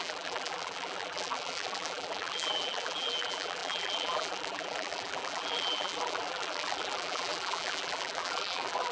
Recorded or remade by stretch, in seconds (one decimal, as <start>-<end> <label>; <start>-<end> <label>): 0.0-8.9 remade